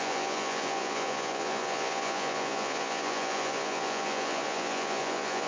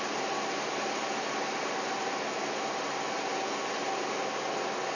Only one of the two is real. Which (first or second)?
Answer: second